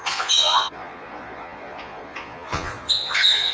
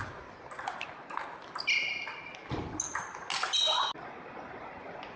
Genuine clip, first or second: second